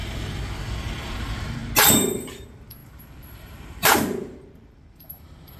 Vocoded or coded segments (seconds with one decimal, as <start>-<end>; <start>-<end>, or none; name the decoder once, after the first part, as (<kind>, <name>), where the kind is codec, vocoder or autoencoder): 1.0-1.6 (vocoder, BigVGAN v2); 2.3-5.6